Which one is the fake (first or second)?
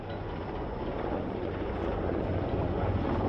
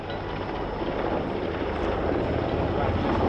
first